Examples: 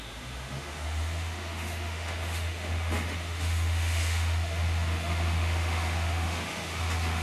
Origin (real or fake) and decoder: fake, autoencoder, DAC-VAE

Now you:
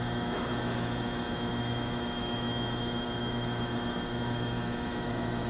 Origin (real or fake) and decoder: fake, autoencoder, DAC-VAE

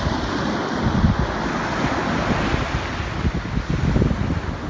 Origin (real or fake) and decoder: real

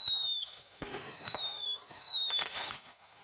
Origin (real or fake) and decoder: fake, autoencoder, DAC-VAE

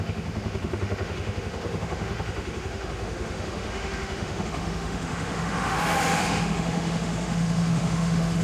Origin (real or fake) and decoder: fake, autoencoder, DAC-VAE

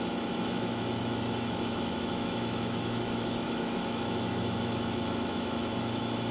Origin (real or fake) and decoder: fake, autoencoder, DAC-VAE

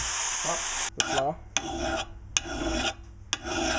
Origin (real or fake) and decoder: real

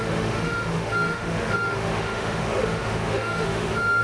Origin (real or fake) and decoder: fake, autoencoder, DAC-VAE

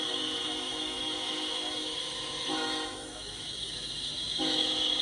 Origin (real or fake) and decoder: fake, autoencoder, DAC-VAE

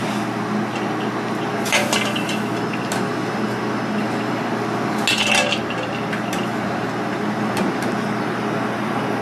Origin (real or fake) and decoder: real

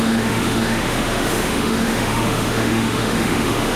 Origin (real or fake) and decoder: fake, autoencoder, DAC-VAE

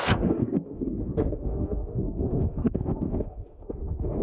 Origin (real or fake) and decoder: fake, autoencoder, DAC-VAE